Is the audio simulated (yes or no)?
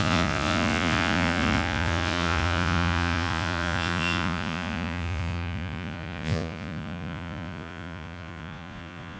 yes